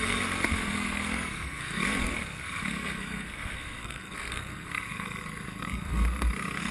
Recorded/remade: remade